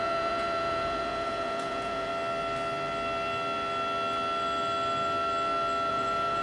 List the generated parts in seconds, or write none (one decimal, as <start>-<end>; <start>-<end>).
0.0-2.1; 5.9-6.4

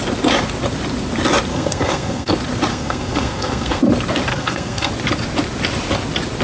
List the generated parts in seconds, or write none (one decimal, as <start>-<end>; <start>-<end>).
1.5-2.3; 2.7-3.8; 4.3-4.9

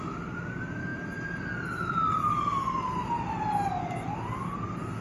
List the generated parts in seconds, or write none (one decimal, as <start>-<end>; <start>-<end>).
none

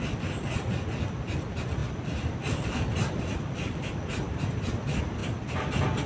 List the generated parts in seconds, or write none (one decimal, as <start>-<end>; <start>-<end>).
none